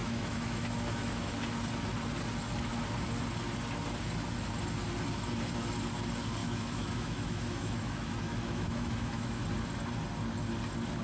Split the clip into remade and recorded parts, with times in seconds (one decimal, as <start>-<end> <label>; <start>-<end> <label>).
0.0-1.3 remade; 1.3-6.4 recorded; 6.4-9.4 remade; 9.4-11.0 recorded